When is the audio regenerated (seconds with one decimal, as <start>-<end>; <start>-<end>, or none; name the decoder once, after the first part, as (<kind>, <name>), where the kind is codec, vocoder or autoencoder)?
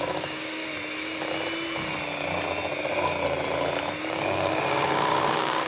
0.0-0.6 (codec, DAC); 4.0-5.7